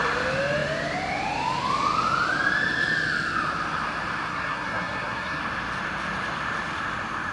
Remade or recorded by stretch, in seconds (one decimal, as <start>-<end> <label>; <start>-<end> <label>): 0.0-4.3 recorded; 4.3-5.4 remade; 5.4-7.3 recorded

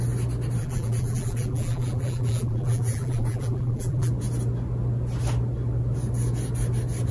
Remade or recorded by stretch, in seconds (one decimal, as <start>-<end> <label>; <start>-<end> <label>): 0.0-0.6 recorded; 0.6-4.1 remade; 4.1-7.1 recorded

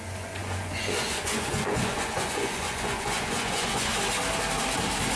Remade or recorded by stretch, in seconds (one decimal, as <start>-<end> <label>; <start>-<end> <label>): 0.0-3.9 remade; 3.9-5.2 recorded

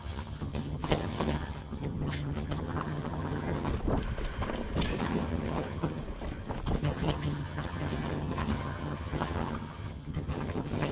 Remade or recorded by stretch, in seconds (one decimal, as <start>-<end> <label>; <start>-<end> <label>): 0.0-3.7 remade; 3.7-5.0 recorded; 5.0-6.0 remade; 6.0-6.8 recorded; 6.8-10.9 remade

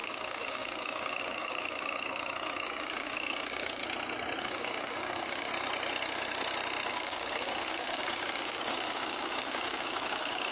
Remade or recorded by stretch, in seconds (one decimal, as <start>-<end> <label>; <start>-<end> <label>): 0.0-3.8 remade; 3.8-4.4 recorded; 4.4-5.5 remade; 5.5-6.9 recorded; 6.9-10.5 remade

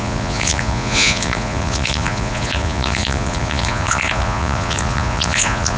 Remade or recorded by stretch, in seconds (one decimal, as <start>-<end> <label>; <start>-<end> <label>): 0.0-5.8 remade

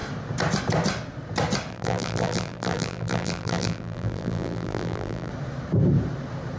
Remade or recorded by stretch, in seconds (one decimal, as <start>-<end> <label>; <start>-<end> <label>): 0.0-1.7 recorded; 1.7-5.3 remade; 5.3-6.6 recorded